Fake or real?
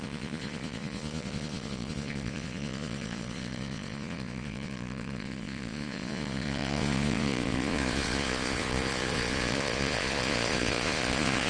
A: fake